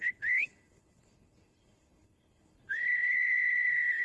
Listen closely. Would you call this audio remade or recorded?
remade